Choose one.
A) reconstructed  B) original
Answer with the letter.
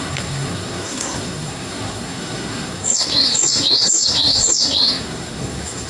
A